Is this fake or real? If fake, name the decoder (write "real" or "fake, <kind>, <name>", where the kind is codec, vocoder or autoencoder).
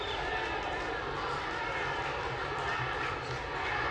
real